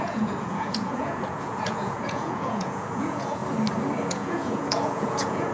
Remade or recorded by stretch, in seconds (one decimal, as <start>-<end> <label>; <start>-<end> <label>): 0.0-3.4 remade; 3.4-4.1 recorded; 4.1-5.5 remade